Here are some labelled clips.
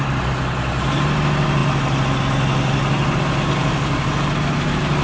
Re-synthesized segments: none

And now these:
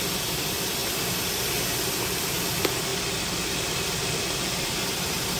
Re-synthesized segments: 2.9-5.4 (vocoder, BigVGAN v2)

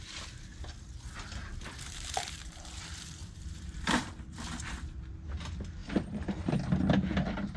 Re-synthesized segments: 3.2-4.1 (vocoder, BigVGAN v2); 5.8-6.5

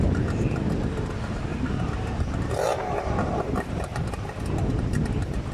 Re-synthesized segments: 1.5-4.4 (vocoder, BigVGAN v2)

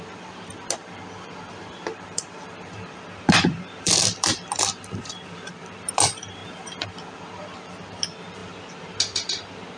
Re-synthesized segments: 0.0-6.4 (vocoder, BigVGAN v2); 6.9-8.4

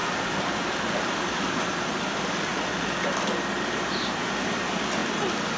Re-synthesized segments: 0.0-1.6 (vocoder, BigVGAN v2)